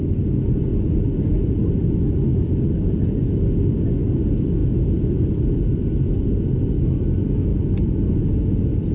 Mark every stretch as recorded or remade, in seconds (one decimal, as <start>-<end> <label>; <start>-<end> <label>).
0.0-0.7 recorded; 0.7-1.6 remade; 1.6-2.3 recorded; 2.3-3.2 remade; 3.2-4.6 recorded; 4.6-5.2 remade; 5.2-7.5 recorded; 7.5-8.2 remade; 8.2-8.9 recorded